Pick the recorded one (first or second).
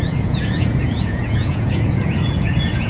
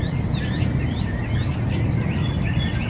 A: second